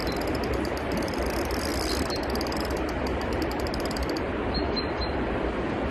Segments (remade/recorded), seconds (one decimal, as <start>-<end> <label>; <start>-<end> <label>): 0.0-0.7 recorded; 0.7-1.7 remade; 1.7-3.3 recorded; 3.3-5.9 remade